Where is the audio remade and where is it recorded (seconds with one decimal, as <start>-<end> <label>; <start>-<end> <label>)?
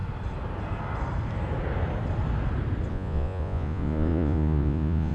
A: 0.0-2.9 recorded; 2.9-5.1 remade